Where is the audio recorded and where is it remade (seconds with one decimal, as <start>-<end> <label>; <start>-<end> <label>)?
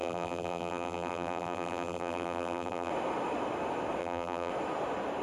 0.0-2.9 remade; 2.9-4.0 recorded; 4.0-4.5 remade; 4.5-5.2 recorded